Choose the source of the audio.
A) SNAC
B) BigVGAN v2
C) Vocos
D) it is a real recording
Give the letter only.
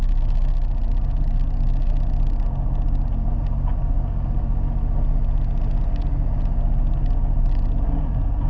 D